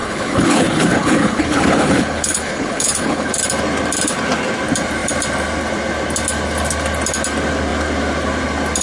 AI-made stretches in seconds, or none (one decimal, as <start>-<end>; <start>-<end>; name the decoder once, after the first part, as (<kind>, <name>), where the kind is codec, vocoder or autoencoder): 0.0-3.3 (codec, HILCodec)

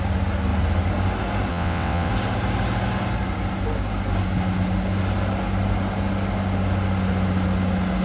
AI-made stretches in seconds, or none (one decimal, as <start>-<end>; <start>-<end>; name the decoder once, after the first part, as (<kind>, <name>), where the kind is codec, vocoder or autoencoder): 1.5-2.1 (vocoder, WaveNeXt)

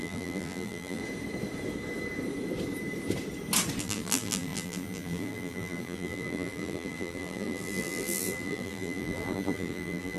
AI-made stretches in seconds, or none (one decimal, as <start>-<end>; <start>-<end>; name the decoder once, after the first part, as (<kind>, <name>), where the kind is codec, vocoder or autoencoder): 0.0-1.0 (vocoder, BigVGAN v2); 3.8-10.2

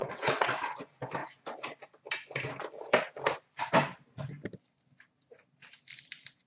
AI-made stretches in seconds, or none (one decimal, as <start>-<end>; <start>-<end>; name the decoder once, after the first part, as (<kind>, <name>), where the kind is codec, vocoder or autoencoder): 0.0-0.5 (vocoder, WaveNeXt)

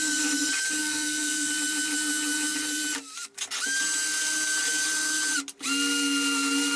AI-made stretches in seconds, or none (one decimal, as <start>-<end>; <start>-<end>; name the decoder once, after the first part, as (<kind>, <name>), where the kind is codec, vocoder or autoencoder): 0.8-1.5 (codec, SNAC)

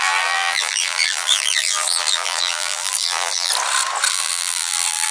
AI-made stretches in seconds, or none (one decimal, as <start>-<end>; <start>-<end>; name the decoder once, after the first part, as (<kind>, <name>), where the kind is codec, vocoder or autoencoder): 0.0-3.5 (vocoder, BigVGAN v2); 4.1-5.1